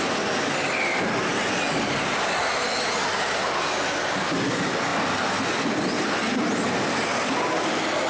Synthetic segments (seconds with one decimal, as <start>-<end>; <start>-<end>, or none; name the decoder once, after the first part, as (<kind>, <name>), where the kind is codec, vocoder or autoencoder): none